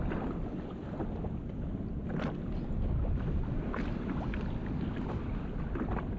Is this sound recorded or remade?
recorded